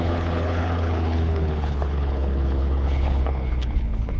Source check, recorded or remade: remade